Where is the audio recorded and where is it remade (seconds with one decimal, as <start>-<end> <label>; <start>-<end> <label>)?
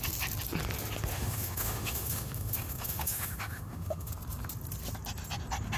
0.0-1.1 recorded; 1.1-4.1 remade; 4.1-5.8 recorded